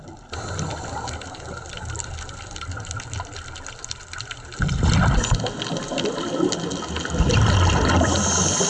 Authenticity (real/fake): real